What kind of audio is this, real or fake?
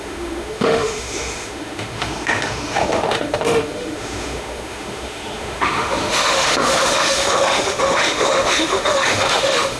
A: fake